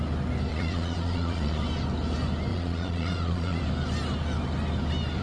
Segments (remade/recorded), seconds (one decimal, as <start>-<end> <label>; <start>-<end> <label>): 0.0-0.5 recorded; 0.5-1.6 remade; 1.6-2.5 recorded; 2.5-3.6 remade; 3.6-5.2 recorded